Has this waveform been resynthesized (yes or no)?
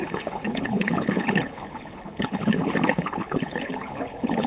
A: yes